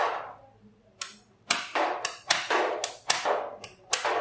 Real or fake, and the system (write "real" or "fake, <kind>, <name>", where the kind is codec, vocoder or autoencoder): real